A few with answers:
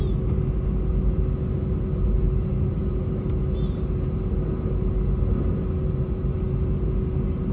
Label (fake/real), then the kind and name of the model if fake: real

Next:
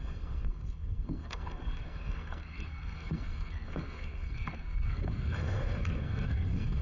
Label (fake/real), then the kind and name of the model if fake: fake, codec, SNAC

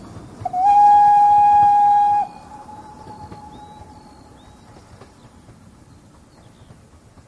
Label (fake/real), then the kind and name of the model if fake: real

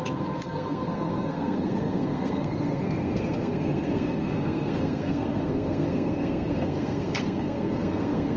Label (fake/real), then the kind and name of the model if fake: fake, codec, SNAC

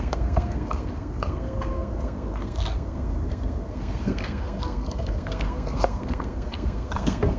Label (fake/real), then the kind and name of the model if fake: fake, codec, SNAC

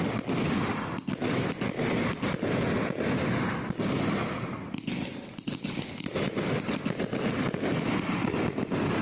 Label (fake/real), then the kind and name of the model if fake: real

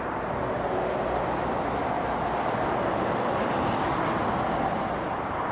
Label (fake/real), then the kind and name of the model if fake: real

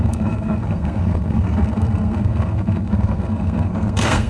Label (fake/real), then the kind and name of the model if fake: fake, codec, SNAC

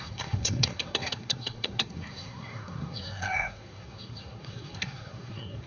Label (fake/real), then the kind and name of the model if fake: fake, codec, SNAC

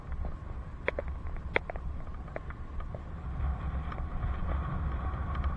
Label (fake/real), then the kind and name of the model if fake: real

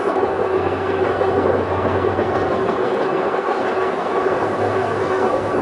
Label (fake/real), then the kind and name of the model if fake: fake, codec, SNAC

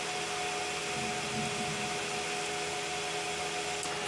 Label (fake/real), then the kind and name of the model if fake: real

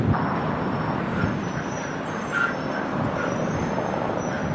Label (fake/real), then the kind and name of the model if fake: real